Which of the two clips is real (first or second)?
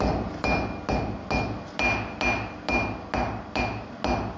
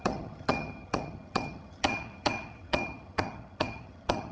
first